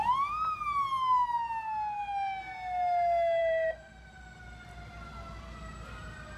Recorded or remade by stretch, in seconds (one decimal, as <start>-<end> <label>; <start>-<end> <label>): 0.0-3.4 recorded; 3.4-4.2 remade; 4.2-6.4 recorded